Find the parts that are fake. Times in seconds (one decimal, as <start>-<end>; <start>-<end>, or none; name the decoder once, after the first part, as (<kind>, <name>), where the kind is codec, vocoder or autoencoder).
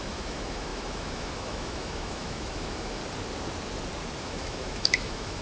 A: 0.0-3.0 (autoencoder, DAC-VAE); 4.2-5.4